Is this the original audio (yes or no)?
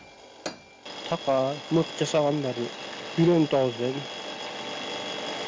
yes